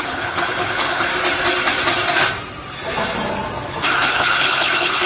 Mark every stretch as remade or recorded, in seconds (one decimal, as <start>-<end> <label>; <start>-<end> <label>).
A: 0.0-1.1 remade; 1.1-4.1 recorded; 4.1-5.1 remade